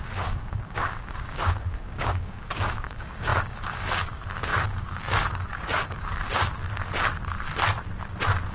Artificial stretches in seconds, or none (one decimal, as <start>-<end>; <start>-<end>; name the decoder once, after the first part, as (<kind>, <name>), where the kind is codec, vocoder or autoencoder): 0.0-6.6 (codec, DAC)